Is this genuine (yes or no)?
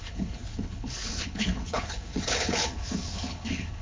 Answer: no